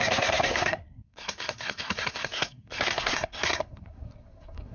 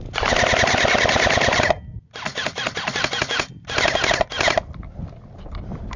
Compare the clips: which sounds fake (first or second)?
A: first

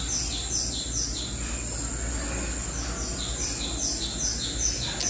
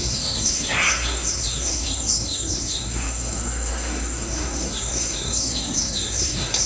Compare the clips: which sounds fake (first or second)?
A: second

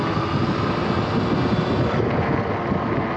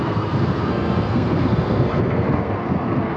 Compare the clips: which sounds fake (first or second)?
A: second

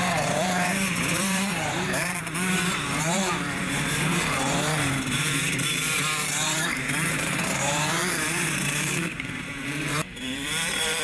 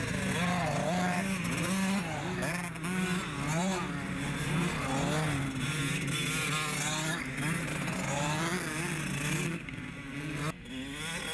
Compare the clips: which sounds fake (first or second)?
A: first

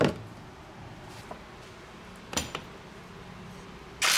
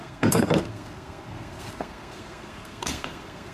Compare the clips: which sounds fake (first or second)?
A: second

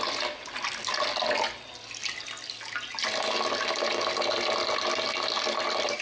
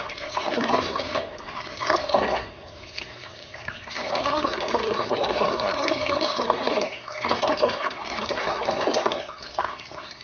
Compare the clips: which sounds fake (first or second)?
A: second